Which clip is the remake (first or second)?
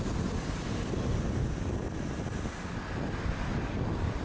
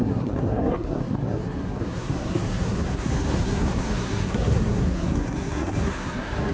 second